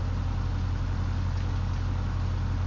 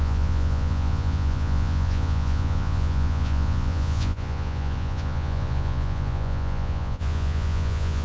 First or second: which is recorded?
first